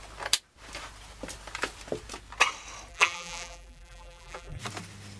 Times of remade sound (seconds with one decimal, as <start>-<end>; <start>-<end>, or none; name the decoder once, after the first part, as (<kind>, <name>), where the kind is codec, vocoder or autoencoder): 2.9-4.6 (vocoder, BigVGAN v2)